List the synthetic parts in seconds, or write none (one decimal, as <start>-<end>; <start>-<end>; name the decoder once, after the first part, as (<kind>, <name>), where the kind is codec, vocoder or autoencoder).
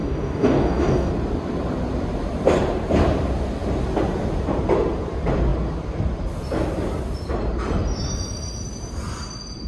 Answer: 0.0-1.1 (codec, DAC)